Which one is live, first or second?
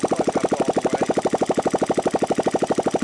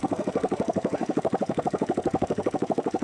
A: first